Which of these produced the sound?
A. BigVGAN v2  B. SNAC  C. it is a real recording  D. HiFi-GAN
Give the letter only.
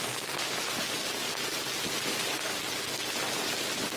C